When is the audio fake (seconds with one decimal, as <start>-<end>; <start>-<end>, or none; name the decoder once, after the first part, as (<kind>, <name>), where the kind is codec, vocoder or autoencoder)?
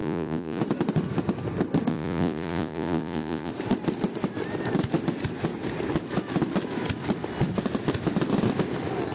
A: 0.0-0.6 (vocoder, Vocos); 1.9-3.5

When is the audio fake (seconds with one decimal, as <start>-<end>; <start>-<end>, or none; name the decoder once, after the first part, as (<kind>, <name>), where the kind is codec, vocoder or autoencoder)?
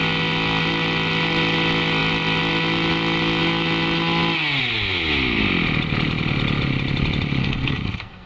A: 7.4-8.3 (codec, SNAC)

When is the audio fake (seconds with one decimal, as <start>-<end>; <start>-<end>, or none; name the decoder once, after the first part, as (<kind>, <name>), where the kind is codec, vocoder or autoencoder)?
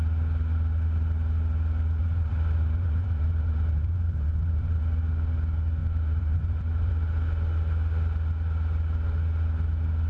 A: 2.0-4.8 (vocoder, BigVGAN v2); 5.8-6.9